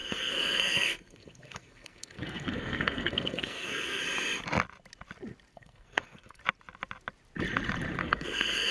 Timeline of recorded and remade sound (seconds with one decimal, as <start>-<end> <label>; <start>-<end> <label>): 0.0-4.0 remade; 4.0-5.5 recorded; 5.5-6.4 remade; 6.4-8.0 recorded; 8.0-8.7 remade